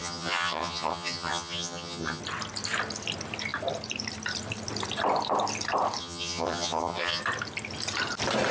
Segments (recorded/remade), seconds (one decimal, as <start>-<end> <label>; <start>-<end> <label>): 0.0-2.2 remade; 2.2-6.0 recorded; 6.0-7.2 remade; 7.2-8.5 recorded